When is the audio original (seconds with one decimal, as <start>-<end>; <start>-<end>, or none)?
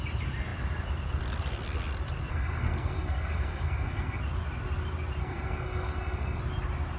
0.0-2.3; 4.2-5.2; 6.4-7.0